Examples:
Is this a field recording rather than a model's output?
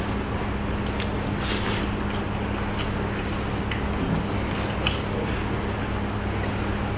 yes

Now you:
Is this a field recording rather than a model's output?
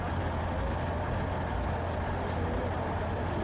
yes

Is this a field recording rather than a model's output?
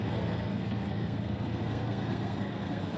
no